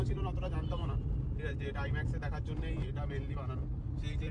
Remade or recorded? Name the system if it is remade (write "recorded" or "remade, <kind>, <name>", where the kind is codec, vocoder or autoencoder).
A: recorded